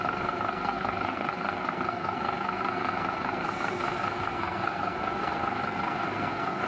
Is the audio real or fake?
fake